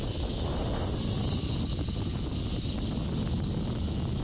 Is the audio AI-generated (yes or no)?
no